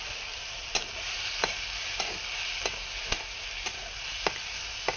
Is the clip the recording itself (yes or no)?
yes